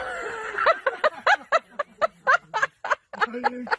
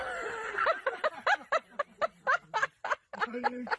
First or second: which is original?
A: first